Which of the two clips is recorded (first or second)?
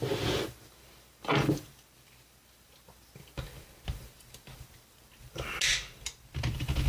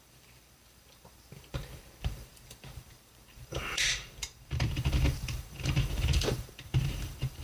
first